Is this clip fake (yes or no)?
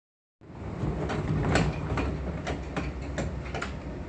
no